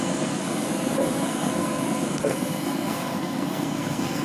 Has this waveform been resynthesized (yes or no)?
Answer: yes